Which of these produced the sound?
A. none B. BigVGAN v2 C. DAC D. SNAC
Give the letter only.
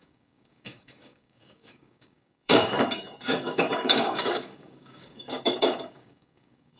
C